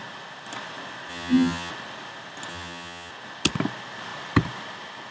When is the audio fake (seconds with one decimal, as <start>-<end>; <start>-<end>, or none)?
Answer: 1.1-1.7; 2.5-3.1